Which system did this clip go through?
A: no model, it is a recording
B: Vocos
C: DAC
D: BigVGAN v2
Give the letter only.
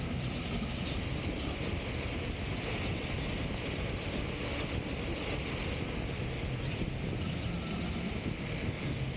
A